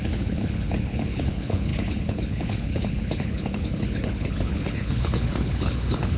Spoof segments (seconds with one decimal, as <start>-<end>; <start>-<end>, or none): 0.0-6.2